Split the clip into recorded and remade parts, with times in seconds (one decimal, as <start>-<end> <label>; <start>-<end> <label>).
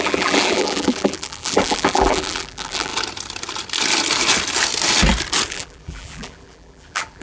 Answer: 0.0-2.9 remade; 2.9-5.5 recorded; 5.5-7.2 remade